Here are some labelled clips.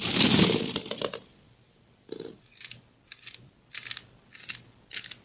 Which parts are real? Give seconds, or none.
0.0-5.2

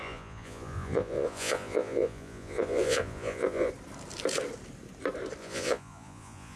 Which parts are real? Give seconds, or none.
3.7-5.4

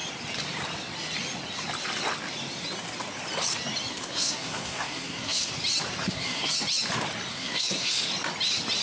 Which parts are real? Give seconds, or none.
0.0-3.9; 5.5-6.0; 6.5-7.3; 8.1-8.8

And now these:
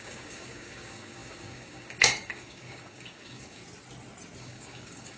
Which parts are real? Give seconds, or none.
3.6-4.4

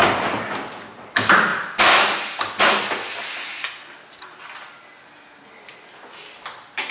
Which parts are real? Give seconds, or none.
0.0-6.9

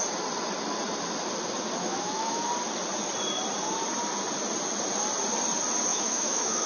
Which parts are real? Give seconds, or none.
0.0-1.8; 2.5-5.9